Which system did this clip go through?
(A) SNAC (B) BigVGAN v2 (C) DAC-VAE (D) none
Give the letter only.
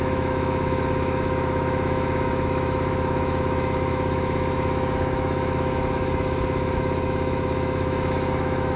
C